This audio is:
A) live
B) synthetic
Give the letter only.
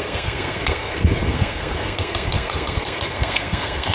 B